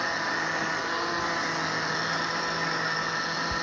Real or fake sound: real